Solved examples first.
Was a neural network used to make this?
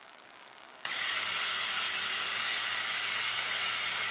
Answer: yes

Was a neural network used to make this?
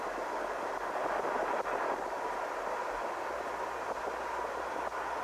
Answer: no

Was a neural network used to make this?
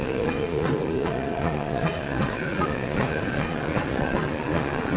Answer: yes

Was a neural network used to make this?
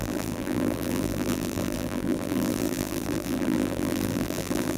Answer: yes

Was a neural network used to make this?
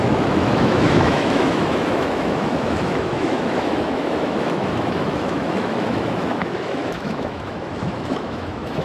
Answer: yes